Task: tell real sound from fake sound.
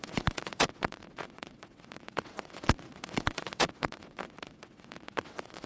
fake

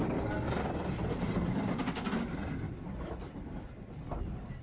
real